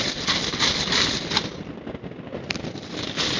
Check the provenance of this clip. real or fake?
real